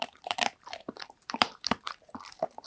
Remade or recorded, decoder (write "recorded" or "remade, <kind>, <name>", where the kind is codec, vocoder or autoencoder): remade, vocoder, BigVGAN v2